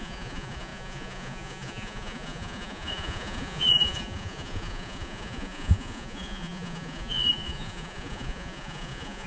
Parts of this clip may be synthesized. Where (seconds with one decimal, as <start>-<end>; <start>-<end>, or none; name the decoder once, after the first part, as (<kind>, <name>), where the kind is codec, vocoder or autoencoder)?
0.0-9.3 (vocoder, Vocos)